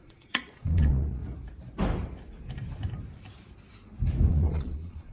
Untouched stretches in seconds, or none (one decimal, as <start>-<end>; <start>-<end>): 1.2-4.3